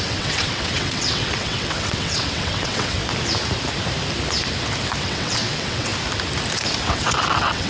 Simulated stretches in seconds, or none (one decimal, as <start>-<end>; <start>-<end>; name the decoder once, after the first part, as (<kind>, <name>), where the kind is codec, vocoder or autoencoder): 0.0-3.0 (vocoder, WaveNeXt); 5.0-5.9; 6.8-7.7